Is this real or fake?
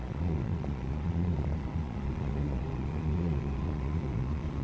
fake